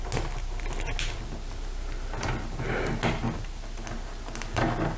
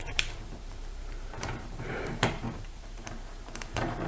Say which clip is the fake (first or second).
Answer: second